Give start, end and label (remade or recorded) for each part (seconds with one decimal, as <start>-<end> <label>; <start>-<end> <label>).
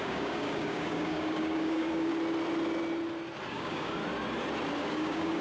0.0-2.1 remade; 2.1-3.5 recorded; 3.5-4.0 remade; 4.0-4.9 recorded; 4.9-5.4 remade